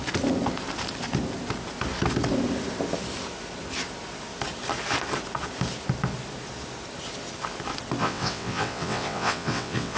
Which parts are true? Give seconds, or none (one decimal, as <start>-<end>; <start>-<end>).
0.0-8.0